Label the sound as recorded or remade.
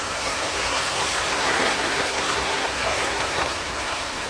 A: remade